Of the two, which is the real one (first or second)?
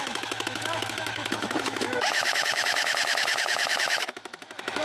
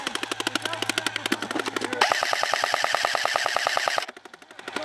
second